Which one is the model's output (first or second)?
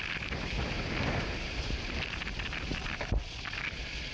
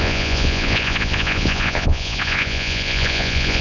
second